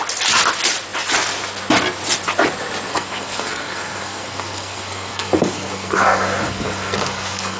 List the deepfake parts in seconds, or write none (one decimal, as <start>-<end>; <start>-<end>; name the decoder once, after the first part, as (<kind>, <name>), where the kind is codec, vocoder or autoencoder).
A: 2.9-7.6 (codec, SNAC)